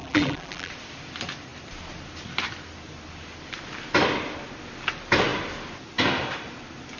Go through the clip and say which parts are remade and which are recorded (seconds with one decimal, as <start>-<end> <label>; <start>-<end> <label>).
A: 0.0-0.7 remade; 0.7-7.0 recorded